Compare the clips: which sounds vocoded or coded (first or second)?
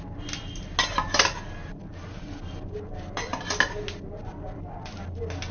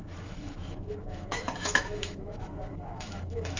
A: second